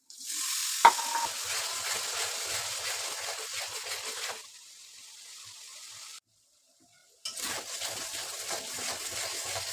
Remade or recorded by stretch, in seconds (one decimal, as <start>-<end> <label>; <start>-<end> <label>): 0.0-5.7 recorded; 5.7-6.6 remade; 6.6-9.7 recorded